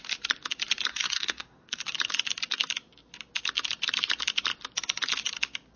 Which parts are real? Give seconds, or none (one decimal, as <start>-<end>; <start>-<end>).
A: 0.0-0.9; 1.8-5.8